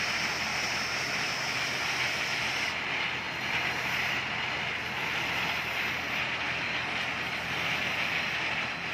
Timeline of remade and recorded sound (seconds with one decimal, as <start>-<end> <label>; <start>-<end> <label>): 0.0-8.9 recorded